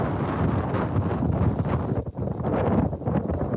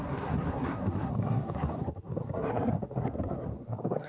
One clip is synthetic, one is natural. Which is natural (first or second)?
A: first